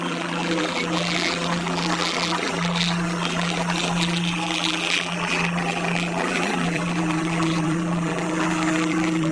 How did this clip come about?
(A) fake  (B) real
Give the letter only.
A